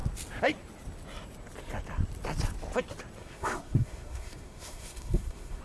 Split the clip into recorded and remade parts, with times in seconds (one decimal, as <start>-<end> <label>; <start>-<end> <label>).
0.0-3.2 recorded; 3.2-5.6 remade